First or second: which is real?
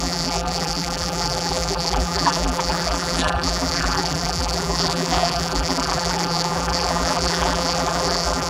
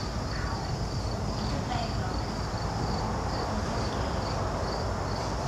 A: second